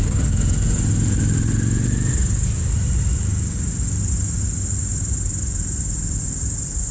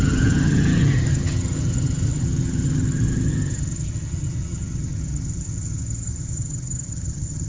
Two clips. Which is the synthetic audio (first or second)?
second